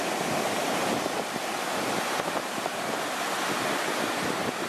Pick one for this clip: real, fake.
fake